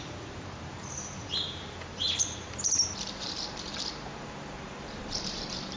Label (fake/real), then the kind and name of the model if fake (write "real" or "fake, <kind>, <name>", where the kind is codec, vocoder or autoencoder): fake, vocoder, BigVGAN v2